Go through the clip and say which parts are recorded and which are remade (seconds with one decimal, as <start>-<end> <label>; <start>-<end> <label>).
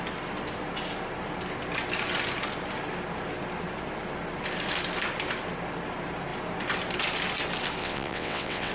0.0-7.8 recorded; 7.8-8.7 remade